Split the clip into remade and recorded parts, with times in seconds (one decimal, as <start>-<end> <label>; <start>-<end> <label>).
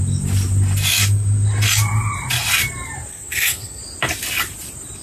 0.0-3.1 recorded; 3.1-3.8 remade; 3.8-5.0 recorded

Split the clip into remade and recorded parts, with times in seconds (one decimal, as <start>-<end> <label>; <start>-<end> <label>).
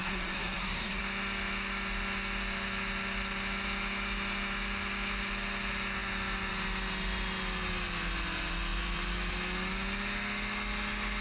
0.0-1.0 remade; 1.0-11.2 recorded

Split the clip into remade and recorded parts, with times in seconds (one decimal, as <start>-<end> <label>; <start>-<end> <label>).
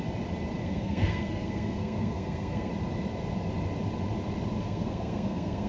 0.0-0.6 recorded; 0.6-2.7 remade; 2.7-4.6 recorded; 4.6-5.7 remade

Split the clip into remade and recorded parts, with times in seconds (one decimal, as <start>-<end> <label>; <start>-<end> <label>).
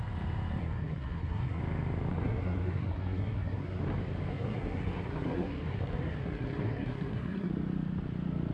0.0-0.6 recorded; 0.6-1.6 remade; 1.6-2.1 recorded; 2.1-3.8 remade; 3.8-4.3 recorded; 4.3-7.5 remade; 7.5-8.5 recorded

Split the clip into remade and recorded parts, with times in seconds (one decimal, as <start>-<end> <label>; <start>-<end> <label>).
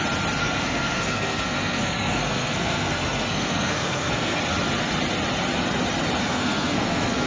0.0-0.4 recorded; 0.4-4.4 remade; 4.4-6.2 recorded; 6.2-7.3 remade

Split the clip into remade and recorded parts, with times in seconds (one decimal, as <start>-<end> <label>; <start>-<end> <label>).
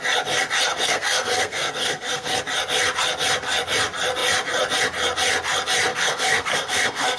0.0-0.7 recorded; 0.7-2.4 remade; 2.4-5.9 recorded; 5.9-7.2 remade